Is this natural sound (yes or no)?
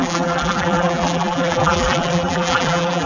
no